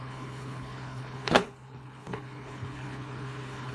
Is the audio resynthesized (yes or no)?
yes